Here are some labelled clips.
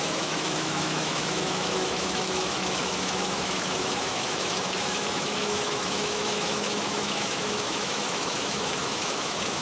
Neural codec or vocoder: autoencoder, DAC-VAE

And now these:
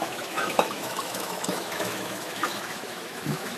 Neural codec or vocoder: autoencoder, DAC-VAE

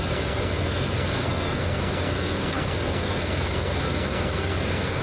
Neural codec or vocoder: codec, SNAC